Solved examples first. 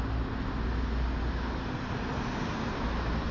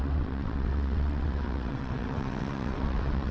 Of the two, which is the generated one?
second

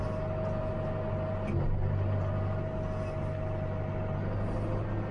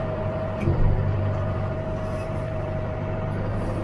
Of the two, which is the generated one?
second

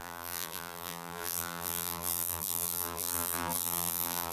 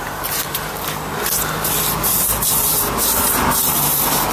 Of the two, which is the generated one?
first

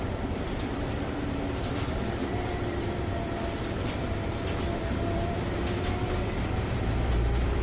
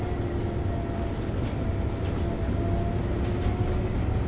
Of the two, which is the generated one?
first